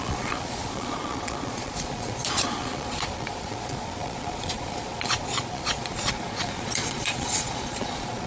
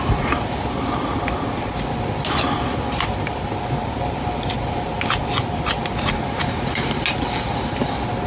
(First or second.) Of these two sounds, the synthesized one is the first